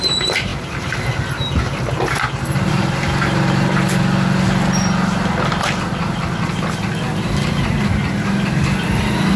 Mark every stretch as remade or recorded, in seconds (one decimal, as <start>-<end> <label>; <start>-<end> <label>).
0.0-9.4 recorded

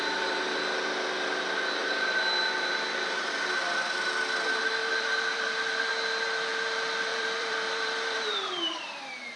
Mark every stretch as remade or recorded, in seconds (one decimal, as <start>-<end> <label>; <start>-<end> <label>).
0.0-1.8 recorded; 1.8-2.7 remade; 2.7-4.8 recorded; 4.8-5.9 remade; 5.9-7.1 recorded; 7.1-9.0 remade; 9.0-9.4 recorded

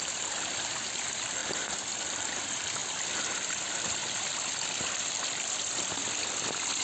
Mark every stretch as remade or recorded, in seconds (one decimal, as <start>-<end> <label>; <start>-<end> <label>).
0.0-2.8 remade; 2.8-5.9 recorded; 5.9-6.8 remade